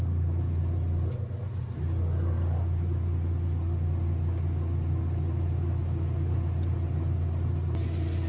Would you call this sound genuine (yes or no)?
yes